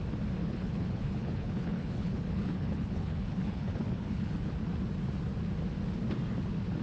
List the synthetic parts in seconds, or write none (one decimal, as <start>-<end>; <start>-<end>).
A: 0.4-4.5